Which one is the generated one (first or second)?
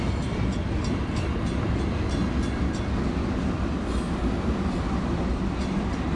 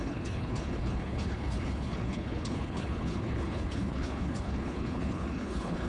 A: second